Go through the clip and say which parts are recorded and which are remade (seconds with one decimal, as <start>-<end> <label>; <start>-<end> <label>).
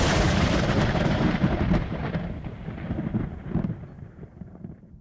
0.0-2.0 remade; 2.0-4.4 recorded; 4.4-5.0 remade